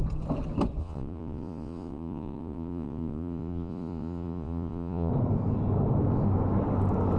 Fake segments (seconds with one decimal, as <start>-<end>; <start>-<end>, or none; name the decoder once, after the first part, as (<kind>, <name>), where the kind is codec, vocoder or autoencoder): 0.8-5.1 (vocoder, Vocos)